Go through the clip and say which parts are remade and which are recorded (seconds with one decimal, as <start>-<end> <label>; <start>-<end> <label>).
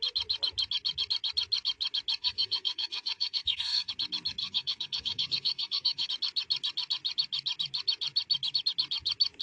0.0-2.2 recorded; 2.2-3.9 remade; 3.9-4.4 recorded; 4.4-6.1 remade; 6.1-9.4 recorded